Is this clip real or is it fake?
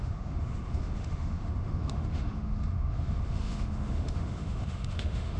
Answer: fake